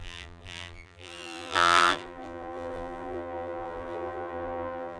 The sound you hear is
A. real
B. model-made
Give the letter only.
B